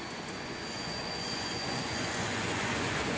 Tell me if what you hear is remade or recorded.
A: remade